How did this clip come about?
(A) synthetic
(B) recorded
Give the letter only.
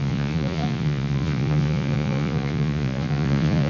A